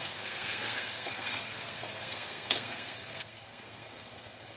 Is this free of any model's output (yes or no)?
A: no